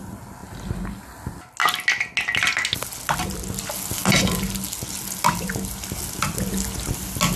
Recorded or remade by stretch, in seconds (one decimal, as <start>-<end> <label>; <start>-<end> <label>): 0.0-7.4 recorded